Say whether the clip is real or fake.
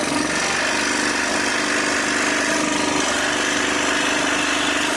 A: real